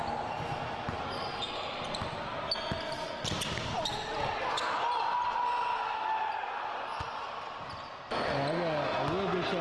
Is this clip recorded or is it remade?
recorded